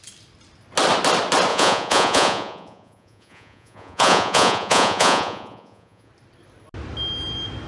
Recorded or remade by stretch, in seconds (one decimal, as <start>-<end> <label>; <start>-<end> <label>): 0.0-1.5 recorded; 1.5-6.1 remade; 6.1-7.7 recorded